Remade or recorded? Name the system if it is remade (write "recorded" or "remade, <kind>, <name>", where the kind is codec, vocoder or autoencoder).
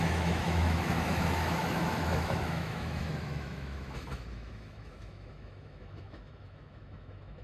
remade, autoencoder, DAC-VAE